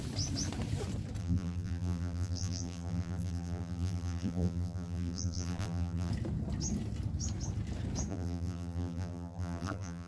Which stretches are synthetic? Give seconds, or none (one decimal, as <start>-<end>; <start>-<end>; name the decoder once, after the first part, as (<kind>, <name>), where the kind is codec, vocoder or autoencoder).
1.2-6.1 (vocoder, BigVGAN v2); 8.1-10.1